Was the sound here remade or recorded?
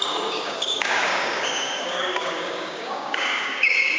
remade